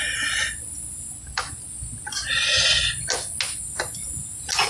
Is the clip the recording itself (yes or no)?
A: yes